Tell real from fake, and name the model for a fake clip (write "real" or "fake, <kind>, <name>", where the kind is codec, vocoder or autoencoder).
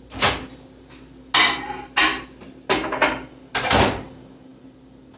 real